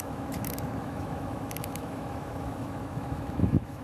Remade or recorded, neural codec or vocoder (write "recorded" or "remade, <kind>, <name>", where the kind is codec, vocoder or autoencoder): remade, autoencoder, DAC-VAE